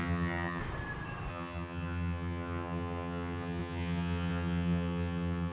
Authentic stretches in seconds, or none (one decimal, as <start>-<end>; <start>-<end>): 0.6-1.3